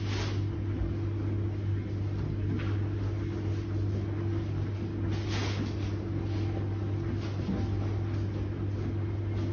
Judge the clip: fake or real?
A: real